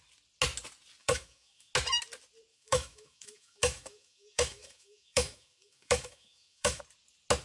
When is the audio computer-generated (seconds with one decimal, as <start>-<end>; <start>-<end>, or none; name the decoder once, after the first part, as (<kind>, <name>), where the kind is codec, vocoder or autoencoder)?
1.0-1.7 (autoencoder, DAC-VAE); 2.5-6.8